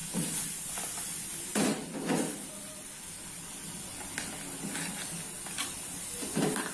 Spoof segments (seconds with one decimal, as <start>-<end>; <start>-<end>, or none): none